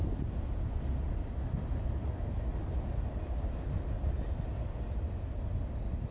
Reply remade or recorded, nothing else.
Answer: recorded